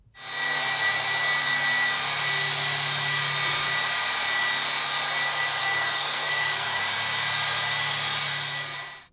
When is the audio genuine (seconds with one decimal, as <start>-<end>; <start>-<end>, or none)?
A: 0.0-5.6; 6.8-9.1